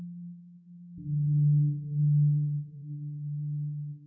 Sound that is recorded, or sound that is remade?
remade